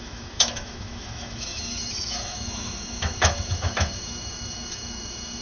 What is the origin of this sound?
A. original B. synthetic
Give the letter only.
B